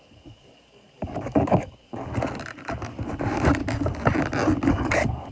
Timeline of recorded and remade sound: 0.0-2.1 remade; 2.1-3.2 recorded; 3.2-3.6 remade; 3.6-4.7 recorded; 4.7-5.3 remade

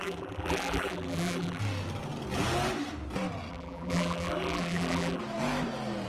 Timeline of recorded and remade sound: 0.0-1.6 remade; 1.6-3.5 recorded; 3.5-5.2 remade; 5.2-6.1 recorded

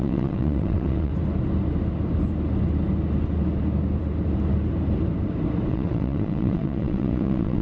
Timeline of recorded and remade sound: 0.0-1.1 remade; 1.1-5.7 recorded; 5.7-7.6 remade

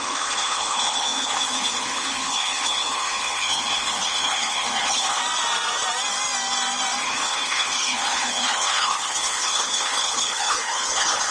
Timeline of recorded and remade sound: 0.0-5.2 remade; 5.2-7.0 recorded; 7.0-11.3 remade

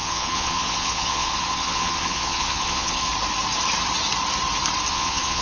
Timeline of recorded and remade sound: 0.0-3.1 remade; 3.1-4.9 recorded; 4.9-5.4 remade

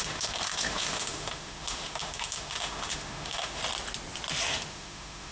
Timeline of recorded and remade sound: 0.0-3.6 remade; 3.6-4.7 recorded; 4.7-5.3 remade

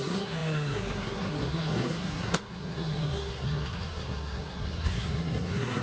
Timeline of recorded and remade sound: 0.0-5.8 remade